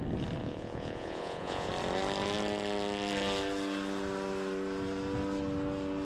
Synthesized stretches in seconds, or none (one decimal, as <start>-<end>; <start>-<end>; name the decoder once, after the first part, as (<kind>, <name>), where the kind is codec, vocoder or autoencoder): 0.4-1.7 (vocoder, Vocos)